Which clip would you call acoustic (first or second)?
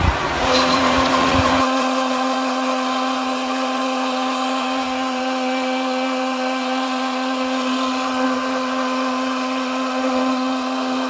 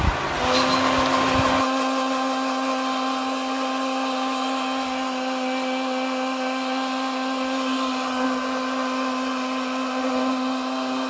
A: second